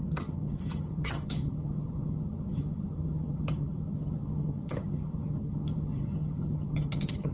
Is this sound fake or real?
fake